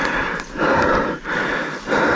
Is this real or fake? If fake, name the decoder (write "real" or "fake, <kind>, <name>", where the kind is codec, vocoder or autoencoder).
real